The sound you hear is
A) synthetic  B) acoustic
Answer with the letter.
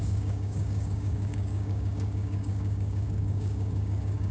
A